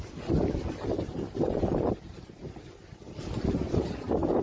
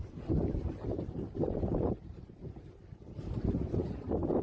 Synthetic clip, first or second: second